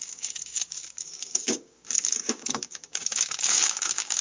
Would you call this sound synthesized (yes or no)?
yes